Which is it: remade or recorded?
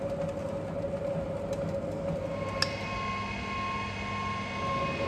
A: recorded